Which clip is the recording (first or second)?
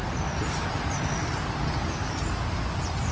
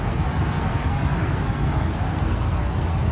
first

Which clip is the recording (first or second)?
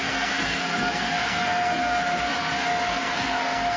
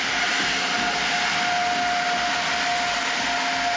second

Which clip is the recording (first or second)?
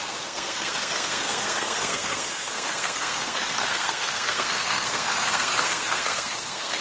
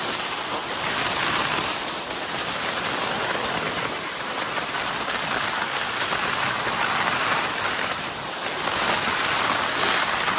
second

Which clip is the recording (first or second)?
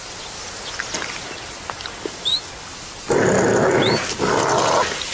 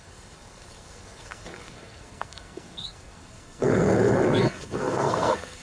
first